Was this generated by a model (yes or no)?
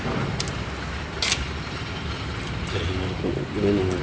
no